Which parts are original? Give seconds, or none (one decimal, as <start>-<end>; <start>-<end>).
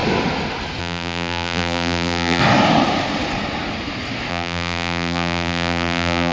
0.0-0.8; 2.4-4.3